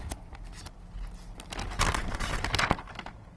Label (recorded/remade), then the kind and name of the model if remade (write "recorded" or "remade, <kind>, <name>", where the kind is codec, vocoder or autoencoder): recorded